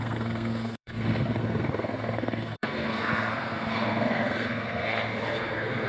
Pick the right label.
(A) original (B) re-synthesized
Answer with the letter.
B